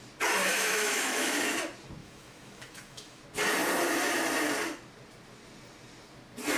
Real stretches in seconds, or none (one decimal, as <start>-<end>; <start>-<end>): 0.0-0.5; 1.4-2.0; 3.2-6.6